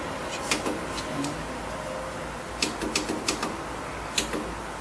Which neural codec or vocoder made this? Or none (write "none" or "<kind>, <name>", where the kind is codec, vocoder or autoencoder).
none